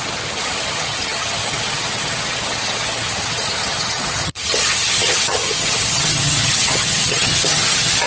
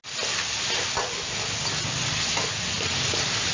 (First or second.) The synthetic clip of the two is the first